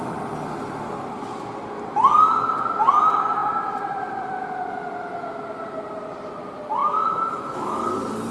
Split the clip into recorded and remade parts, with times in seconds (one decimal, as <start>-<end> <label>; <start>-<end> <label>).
0.0-6.8 recorded; 6.8-7.9 remade; 7.9-8.3 recorded